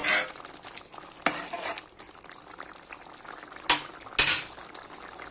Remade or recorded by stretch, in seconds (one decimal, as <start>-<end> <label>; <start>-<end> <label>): 0.0-5.3 recorded